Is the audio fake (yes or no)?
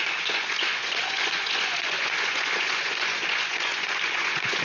yes